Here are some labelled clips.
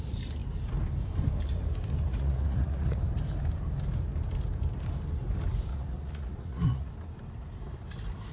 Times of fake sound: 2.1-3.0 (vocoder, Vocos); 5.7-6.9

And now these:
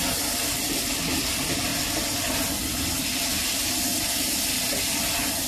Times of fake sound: none

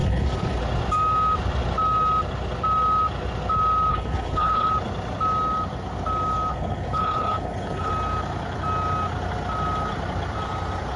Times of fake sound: 0.0-0.6 (codec, HILCodec); 3.9-4.7; 6.5-7.9

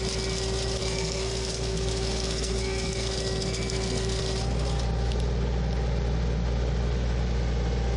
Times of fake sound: 0.8-4.2 (codec, SNAC)

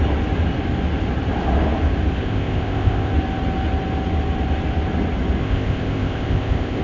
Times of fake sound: 2.2-3.1 (codec, ZipCodec); 5.4-6.8

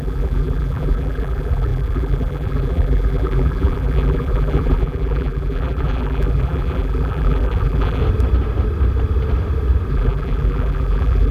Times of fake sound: 0.0-8.0 (vocoder, BigVGAN v2); 9.9-11.3

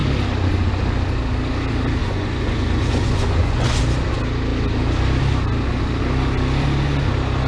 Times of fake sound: 2.0-3.8 (vocoder, Vocos)